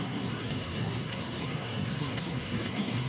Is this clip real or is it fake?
fake